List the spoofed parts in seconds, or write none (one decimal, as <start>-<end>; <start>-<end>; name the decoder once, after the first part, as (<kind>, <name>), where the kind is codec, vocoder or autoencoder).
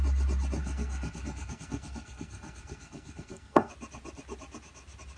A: 0.6-3.7 (codec, SNAC)